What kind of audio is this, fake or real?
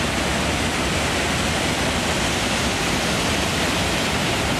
real